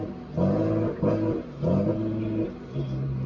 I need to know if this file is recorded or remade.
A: recorded